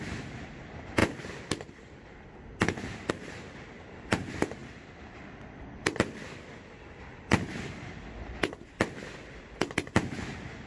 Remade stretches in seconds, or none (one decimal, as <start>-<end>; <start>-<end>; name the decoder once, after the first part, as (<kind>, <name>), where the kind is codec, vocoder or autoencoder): none